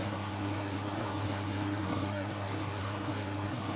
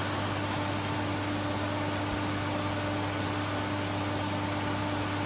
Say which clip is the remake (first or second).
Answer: first